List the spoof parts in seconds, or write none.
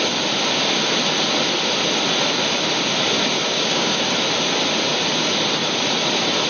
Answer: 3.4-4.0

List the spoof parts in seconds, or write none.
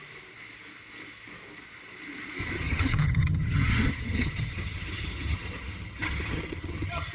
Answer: 2.4-7.1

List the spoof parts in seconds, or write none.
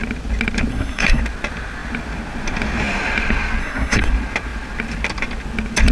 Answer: 0.7-1.2; 3.6-4.1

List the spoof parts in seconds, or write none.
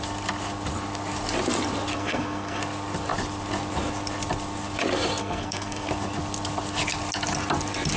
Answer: 1.9-2.6; 5.2-5.9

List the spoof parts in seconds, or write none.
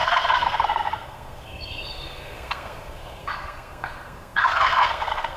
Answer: 0.0-5.4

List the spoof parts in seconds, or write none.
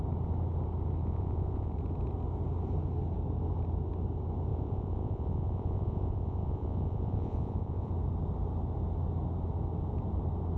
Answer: 1.0-1.7; 4.5-7.9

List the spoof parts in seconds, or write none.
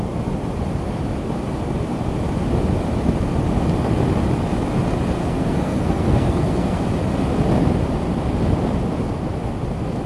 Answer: 5.2-6.8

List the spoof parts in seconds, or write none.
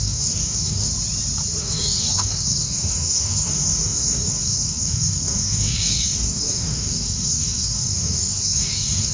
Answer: 0.0-0.9; 1.6-9.1